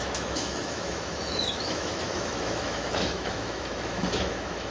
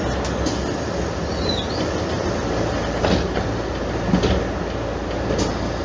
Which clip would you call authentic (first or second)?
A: second